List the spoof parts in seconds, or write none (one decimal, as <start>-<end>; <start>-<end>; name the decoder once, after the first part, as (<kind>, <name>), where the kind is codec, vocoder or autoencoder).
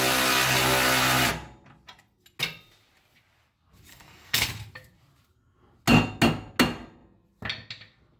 3.9-4.5 (codec, SNAC)